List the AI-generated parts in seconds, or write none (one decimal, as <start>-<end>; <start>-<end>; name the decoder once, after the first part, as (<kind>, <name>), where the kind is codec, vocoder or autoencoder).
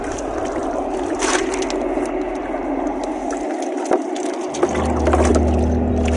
0.6-1.5 (vocoder, BigVGAN v2)